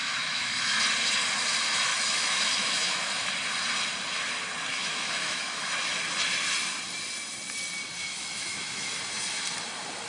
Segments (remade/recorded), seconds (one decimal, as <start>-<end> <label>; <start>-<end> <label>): 0.0-0.8 remade; 0.8-1.9 recorded; 1.9-3.3 remade; 3.3-4.7 recorded; 4.7-5.7 remade; 5.7-8.0 recorded; 8.0-9.0 remade; 9.0-10.1 recorded